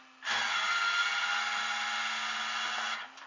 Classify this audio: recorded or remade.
recorded